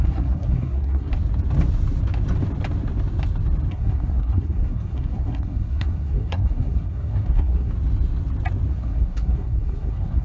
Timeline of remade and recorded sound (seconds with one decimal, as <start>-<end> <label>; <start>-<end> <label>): 0.0-1.1 remade; 1.1-3.7 recorded; 3.7-7.7 remade; 7.7-8.7 recorded; 8.7-10.2 remade